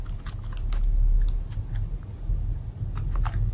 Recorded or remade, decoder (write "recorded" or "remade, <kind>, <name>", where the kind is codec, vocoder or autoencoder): recorded